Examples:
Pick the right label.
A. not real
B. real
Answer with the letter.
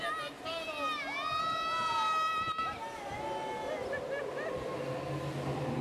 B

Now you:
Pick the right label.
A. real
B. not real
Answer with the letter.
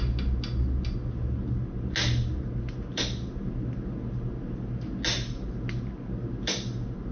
A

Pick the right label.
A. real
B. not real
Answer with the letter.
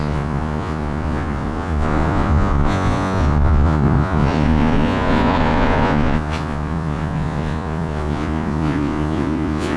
B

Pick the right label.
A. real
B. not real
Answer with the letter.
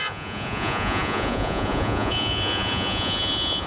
B